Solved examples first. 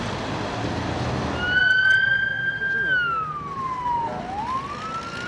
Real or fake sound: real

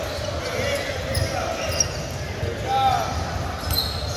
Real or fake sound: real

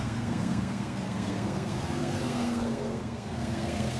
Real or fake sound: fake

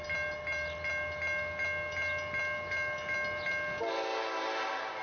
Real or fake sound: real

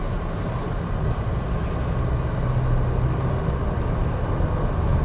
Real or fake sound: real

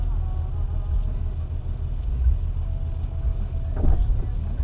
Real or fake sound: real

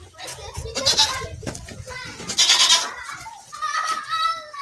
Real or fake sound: real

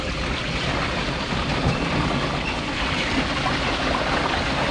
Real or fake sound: real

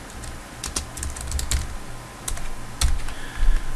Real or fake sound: real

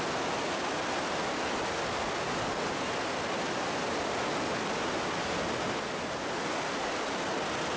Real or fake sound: real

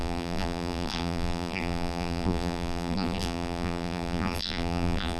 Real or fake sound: fake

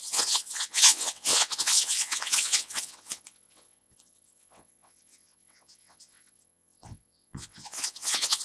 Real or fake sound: fake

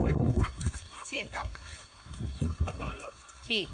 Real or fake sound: fake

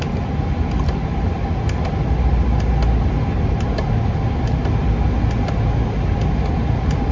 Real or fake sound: real